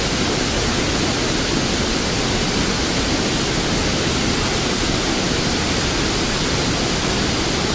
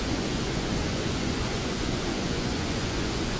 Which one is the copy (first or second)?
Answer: second